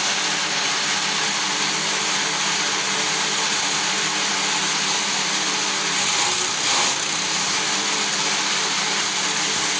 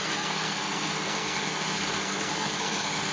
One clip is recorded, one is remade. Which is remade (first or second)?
second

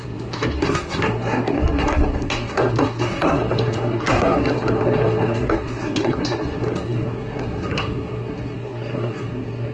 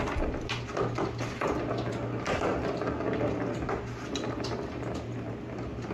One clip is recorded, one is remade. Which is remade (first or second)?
first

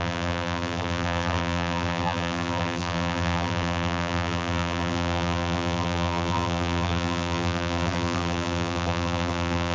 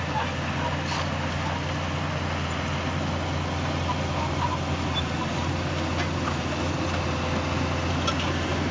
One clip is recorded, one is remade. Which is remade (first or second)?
first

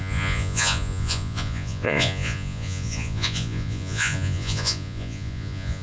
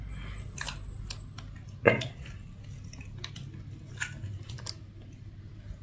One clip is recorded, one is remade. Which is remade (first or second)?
first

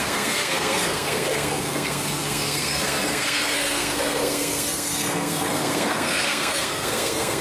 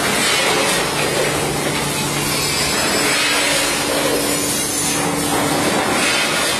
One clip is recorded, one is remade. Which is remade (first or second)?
first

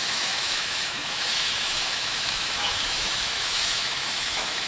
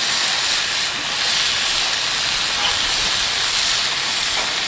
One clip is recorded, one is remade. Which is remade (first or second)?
first